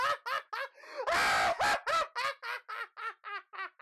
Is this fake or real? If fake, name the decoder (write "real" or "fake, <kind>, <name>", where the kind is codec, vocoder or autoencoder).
real